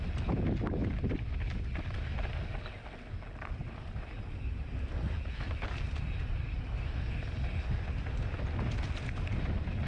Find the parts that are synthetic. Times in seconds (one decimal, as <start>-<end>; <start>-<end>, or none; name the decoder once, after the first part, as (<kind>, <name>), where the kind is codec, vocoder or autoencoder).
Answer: 0.8-2.3 (vocoder, BigVGAN v2); 3.6-4.9